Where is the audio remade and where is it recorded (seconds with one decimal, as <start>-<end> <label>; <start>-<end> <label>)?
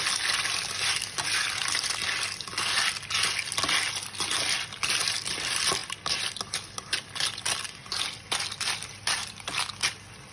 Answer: 0.0-10.3 recorded